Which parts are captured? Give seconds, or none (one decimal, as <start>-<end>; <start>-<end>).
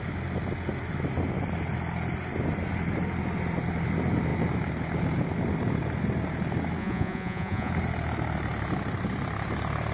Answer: 0.0-6.8; 7.7-9.9